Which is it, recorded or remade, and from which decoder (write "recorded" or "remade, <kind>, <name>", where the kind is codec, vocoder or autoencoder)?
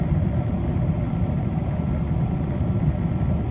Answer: recorded